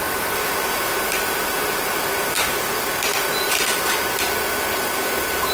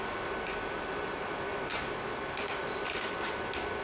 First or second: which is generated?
first